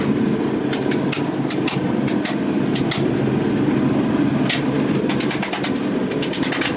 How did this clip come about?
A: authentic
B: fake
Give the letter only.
A